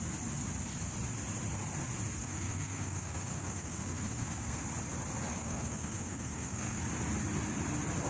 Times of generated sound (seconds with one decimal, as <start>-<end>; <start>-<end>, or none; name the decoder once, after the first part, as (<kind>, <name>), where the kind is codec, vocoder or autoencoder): 2.2-4.6 (codec, SNAC); 5.3-6.8